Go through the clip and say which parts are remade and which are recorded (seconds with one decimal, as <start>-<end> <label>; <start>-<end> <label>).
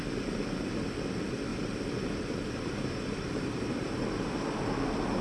0.0-1.5 recorded; 1.5-4.6 remade; 4.6-5.2 recorded